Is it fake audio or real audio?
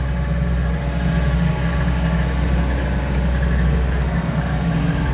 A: real